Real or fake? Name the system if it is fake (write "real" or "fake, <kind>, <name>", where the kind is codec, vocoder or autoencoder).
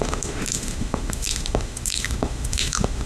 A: fake, autoencoder, DAC-VAE